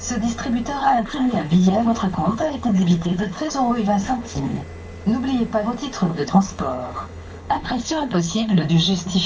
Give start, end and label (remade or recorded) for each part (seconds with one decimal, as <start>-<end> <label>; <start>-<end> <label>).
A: 0.0-0.8 recorded; 0.8-3.5 remade; 3.5-4.0 recorded; 4.0-4.6 remade; 4.6-6.1 recorded; 6.1-8.7 remade; 8.7-9.3 recorded